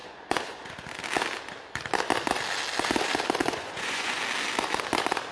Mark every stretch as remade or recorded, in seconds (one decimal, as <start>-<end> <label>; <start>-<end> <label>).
0.0-0.7 remade; 0.7-3.4 recorded; 3.4-4.2 remade; 4.2-5.3 recorded